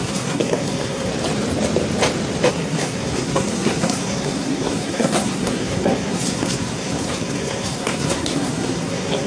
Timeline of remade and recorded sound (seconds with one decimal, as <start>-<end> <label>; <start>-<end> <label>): 0.0-1.1 remade; 1.1-2.5 recorded; 2.5-9.3 remade